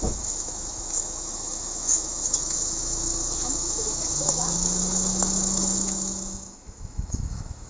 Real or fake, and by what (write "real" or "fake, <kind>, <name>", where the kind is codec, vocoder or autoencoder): fake, autoencoder, DAC-VAE